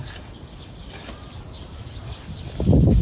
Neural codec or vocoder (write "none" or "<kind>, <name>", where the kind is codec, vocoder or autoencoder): none